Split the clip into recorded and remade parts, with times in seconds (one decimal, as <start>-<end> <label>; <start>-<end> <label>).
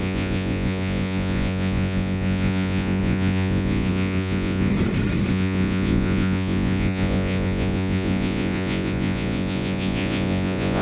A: 0.0-4.7 remade; 4.7-5.3 recorded; 5.3-10.8 remade